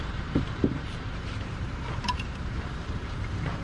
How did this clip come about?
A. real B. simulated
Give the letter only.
B